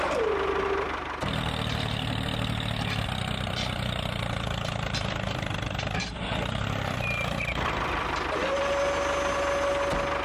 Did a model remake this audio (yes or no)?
no